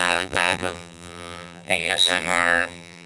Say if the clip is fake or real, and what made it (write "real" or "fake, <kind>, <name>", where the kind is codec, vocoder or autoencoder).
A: fake, vocoder, BigVGAN v2